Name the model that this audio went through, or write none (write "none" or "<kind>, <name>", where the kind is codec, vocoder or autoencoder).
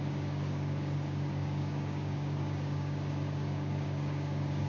codec, DAC